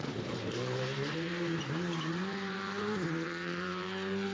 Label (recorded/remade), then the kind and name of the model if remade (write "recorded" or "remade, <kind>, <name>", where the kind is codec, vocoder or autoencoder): remade, vocoder, BigVGAN v2